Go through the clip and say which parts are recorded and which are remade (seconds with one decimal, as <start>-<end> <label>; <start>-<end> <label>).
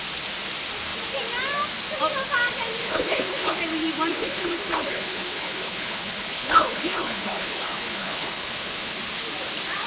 0.0-2.8 recorded; 2.8-3.6 remade; 3.6-4.1 recorded; 4.1-9.0 remade; 9.0-9.9 recorded